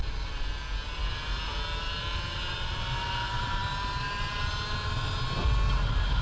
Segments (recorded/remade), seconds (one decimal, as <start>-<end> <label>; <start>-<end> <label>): 0.0-6.2 recorded